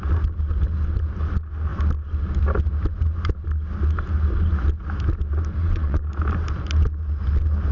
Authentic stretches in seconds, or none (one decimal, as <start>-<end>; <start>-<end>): 0.0-5.6; 6.1-7.7